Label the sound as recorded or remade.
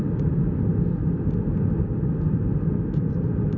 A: recorded